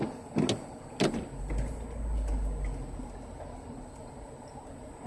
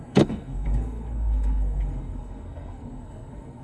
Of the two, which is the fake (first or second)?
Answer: second